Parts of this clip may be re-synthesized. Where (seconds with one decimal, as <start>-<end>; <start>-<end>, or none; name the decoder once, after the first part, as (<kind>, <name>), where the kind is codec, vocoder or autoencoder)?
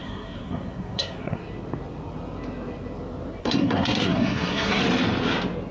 0.0-1.4 (codec, SNAC); 3.4-4.8